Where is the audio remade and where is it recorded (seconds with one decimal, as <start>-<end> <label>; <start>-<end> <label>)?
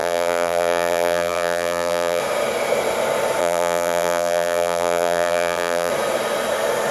0.0-2.2 remade; 2.2-3.4 recorded; 3.4-5.9 remade; 5.9-6.9 recorded